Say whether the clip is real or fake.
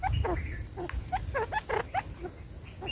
real